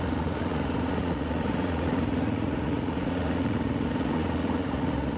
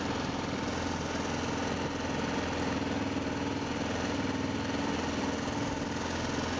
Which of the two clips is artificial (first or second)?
first